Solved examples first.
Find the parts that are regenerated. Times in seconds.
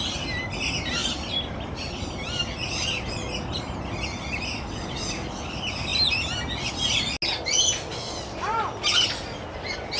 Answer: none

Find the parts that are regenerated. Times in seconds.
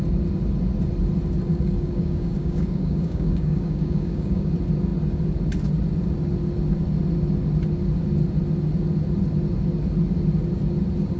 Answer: 1.5-4.5 (codec, DAC)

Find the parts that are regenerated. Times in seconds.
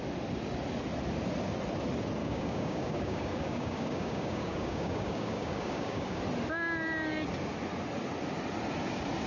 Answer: 2.2-6.2 (codec, DAC)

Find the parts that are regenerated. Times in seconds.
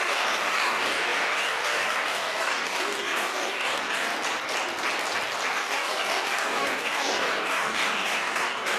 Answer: 0.0-4.1 (codec, DAC); 5.5-8.8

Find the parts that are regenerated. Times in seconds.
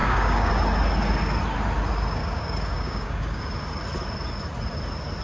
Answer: 0.0-0.5 (codec, DAC); 2.2-3.4